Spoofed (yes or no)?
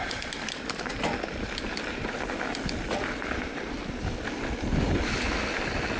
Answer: no